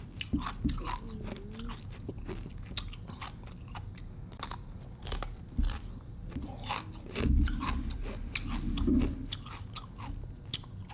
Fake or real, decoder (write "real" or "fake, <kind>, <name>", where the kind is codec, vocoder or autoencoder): real